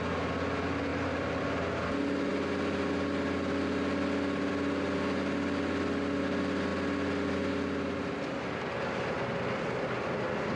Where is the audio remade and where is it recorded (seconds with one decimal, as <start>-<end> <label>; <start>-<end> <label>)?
0.0-0.9 recorded; 0.9-1.4 remade; 1.4-10.6 recorded